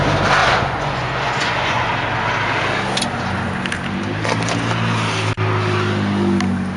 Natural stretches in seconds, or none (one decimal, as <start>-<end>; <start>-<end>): 0.0-0.4; 1.9-6.8